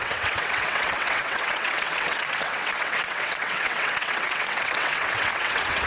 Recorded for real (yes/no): no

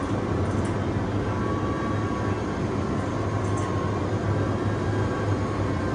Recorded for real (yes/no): yes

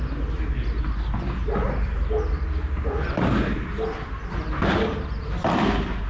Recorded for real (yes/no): yes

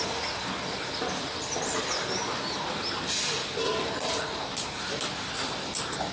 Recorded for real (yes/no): yes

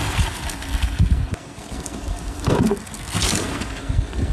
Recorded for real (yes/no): no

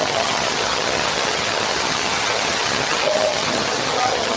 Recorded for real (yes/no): no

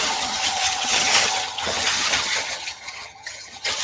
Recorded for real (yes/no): no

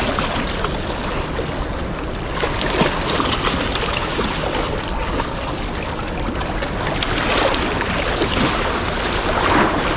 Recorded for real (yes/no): yes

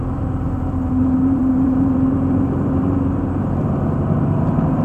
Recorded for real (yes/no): no